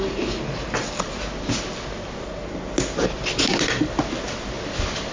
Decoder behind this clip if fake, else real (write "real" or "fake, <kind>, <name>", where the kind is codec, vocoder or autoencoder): real